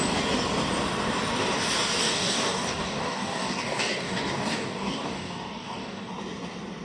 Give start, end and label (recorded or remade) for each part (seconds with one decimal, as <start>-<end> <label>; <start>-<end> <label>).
0.0-2.0 recorded; 2.0-6.1 remade; 6.1-6.8 recorded